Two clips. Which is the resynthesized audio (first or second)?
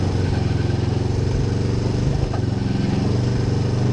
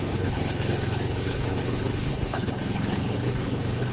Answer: second